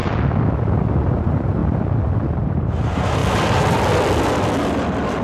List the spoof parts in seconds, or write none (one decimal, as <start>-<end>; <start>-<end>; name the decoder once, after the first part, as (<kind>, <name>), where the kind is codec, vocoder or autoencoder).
1.1-1.6 (vocoder, BigVGAN v2); 2.4-3.2